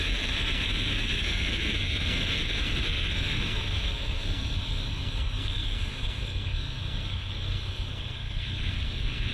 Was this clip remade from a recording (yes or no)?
yes